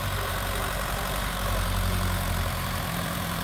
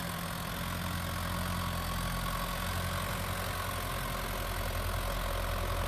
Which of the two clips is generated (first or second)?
first